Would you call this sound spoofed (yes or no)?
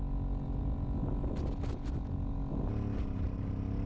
no